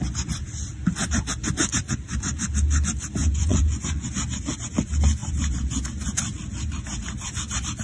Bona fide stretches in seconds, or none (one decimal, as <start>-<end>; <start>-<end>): 0.0-3.2; 4.1-7.8